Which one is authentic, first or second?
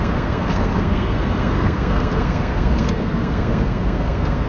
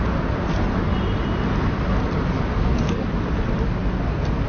second